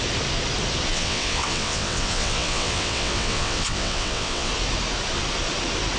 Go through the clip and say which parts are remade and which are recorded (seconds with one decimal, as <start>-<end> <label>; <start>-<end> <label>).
0.0-0.9 recorded; 0.9-4.5 remade; 4.5-6.0 recorded